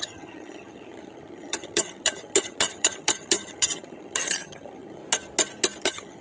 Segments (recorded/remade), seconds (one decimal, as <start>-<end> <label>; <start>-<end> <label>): 0.0-5.0 remade; 5.0-5.8 recorded; 5.8-6.2 remade